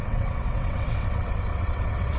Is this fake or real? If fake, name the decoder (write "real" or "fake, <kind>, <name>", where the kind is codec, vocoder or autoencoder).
fake, vocoder, WaveNeXt